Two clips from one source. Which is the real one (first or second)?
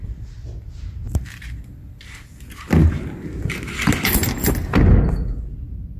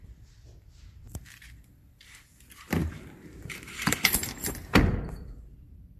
first